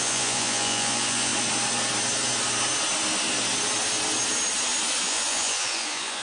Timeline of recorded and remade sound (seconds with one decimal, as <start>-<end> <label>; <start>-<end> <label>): 0.0-1.3 remade; 1.3-5.0 recorded; 5.0-6.2 remade